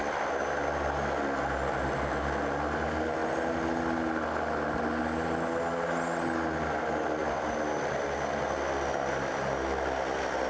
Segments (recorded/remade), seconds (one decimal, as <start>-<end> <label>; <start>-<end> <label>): 0.0-10.5 recorded